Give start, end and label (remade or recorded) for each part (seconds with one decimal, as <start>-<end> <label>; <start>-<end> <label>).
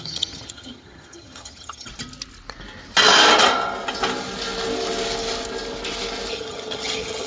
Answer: 0.0-1.9 remade; 1.9-6.3 recorded; 6.3-7.3 remade